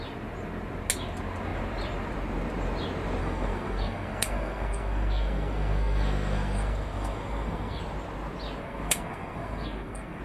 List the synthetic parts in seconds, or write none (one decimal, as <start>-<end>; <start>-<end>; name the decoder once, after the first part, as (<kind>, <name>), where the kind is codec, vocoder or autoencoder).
3.2-7.8 (codec, SNAC); 8.6-10.2